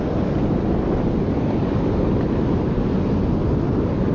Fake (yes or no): no